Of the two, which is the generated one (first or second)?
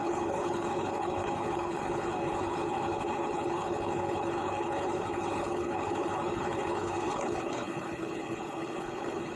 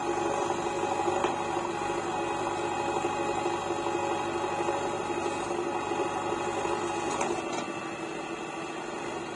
first